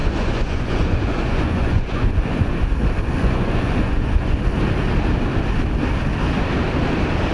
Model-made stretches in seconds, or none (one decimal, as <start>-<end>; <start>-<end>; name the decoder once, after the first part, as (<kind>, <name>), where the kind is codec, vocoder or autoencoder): 0.0-2.6 (vocoder, Vocos); 3.2-4.4